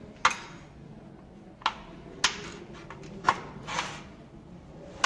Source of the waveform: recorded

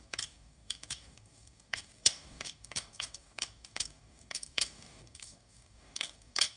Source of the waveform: remade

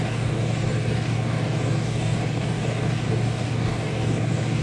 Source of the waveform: remade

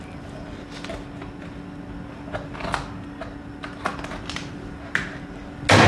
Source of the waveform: recorded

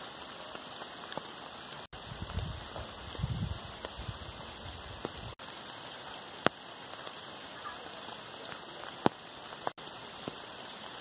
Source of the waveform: recorded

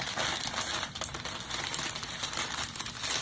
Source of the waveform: recorded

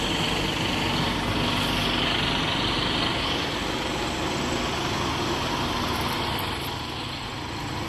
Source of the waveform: recorded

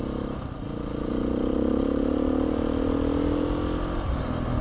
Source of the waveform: recorded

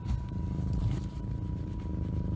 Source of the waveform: recorded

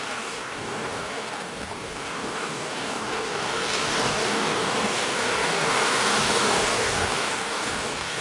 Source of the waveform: remade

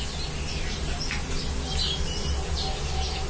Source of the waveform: recorded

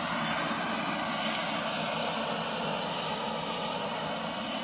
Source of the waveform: recorded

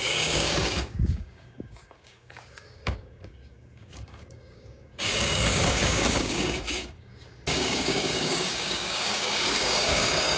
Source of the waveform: remade